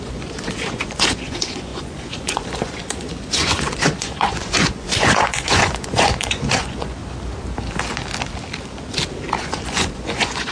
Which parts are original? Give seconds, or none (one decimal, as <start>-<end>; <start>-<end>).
7.0-9.4